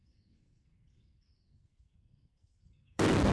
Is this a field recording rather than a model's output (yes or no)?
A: no